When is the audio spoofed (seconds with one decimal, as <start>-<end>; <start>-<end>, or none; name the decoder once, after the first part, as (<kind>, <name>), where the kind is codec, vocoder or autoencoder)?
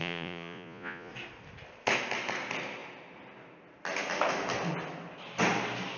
0.0-1.1 (vocoder, Vocos)